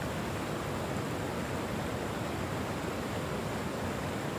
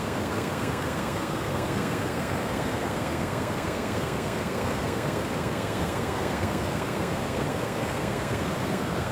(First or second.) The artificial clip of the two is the second